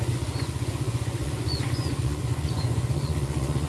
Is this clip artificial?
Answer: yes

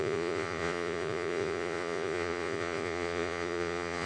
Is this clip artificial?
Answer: yes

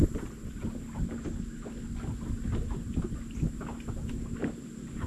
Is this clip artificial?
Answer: no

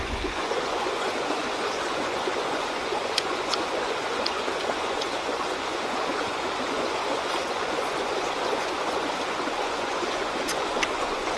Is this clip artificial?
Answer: yes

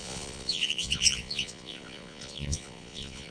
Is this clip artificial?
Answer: yes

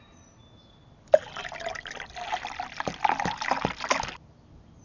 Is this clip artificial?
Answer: no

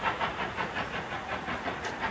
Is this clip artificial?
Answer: yes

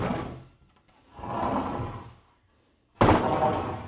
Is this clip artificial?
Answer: no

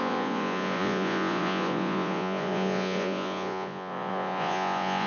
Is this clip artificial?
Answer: yes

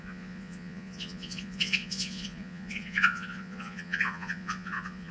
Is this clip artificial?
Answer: yes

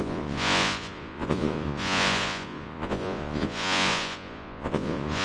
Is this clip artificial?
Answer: yes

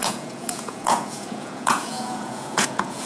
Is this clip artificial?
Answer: yes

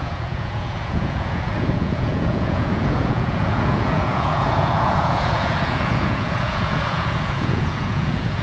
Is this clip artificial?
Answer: yes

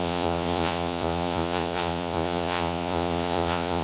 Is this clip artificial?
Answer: yes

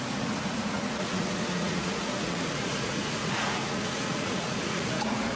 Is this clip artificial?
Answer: yes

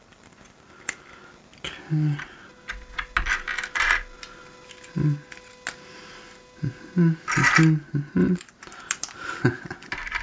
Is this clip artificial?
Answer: no